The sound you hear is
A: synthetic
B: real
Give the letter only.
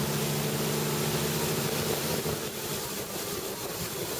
B